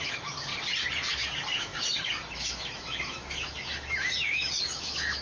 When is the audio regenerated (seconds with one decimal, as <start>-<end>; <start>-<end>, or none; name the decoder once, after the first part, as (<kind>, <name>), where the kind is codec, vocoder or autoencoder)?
0.0-0.5 (autoencoder, DAC-VAE); 1.1-5.2